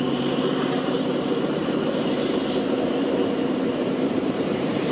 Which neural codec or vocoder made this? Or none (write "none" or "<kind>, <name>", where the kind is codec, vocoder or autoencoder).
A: vocoder, BigVGAN v2